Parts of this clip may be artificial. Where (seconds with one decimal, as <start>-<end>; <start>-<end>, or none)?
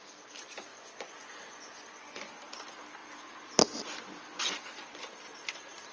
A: 0.7-2.3